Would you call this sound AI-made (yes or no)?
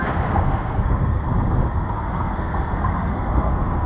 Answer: yes